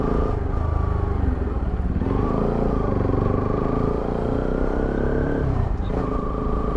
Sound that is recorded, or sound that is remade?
recorded